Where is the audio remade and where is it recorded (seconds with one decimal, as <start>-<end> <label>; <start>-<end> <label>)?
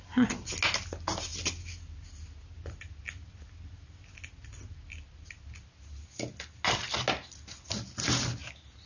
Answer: 0.0-8.9 recorded